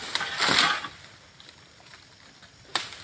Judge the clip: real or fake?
real